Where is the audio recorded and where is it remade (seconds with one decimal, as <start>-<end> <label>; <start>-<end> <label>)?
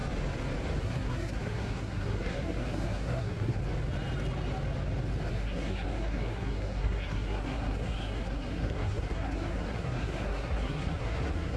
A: 0.0-0.8 recorded; 0.8-3.6 remade; 3.6-5.3 recorded; 5.3-11.6 remade